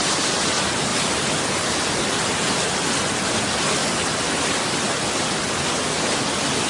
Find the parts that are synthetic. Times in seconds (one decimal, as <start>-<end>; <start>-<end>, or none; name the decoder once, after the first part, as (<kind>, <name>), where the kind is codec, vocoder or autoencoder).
none